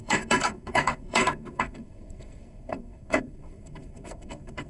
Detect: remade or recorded remade